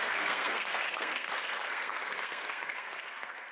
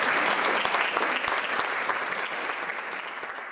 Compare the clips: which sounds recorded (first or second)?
second